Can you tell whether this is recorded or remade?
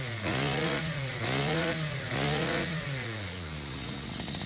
remade